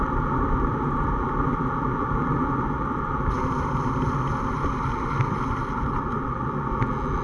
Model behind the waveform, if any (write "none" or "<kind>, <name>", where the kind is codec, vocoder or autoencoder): none